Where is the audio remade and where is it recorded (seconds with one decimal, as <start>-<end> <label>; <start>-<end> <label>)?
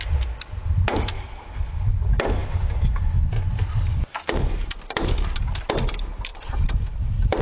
0.0-7.4 recorded